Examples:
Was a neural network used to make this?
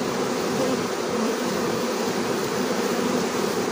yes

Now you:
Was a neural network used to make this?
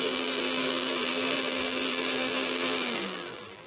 yes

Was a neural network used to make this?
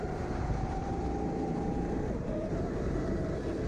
yes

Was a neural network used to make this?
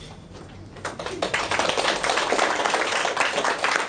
yes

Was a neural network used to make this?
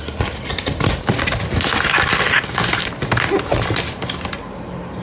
no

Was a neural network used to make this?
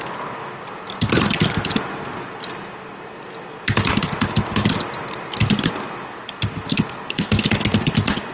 yes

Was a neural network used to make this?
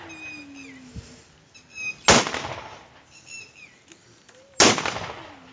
no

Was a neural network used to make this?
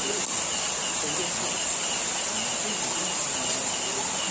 no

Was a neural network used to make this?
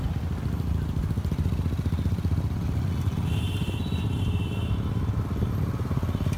no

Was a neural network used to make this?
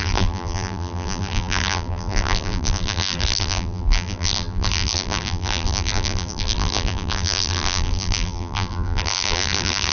yes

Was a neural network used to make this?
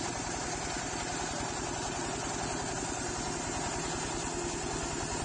no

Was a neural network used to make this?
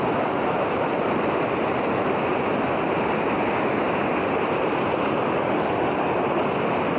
no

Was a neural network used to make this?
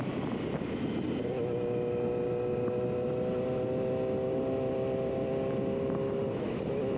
no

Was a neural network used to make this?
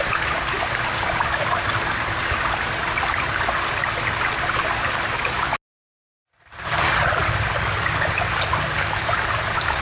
no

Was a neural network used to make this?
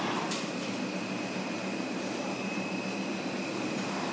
yes